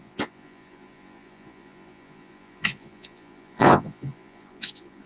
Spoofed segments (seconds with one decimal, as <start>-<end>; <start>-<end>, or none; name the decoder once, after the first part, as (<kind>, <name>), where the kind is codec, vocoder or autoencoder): 0.0-5.1 (vocoder, Vocos)